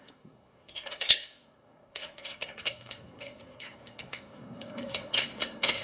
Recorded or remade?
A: remade